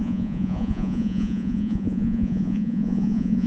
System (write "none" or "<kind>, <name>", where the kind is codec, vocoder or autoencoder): vocoder, Vocos